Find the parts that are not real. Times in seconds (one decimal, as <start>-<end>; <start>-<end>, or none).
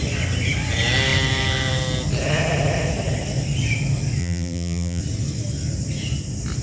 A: 4.2-5.0